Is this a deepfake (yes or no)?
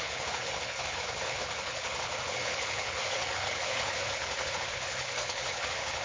yes